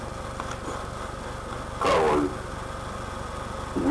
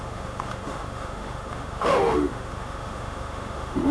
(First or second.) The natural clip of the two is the first